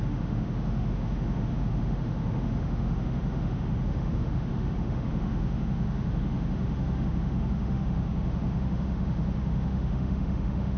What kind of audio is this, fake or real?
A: fake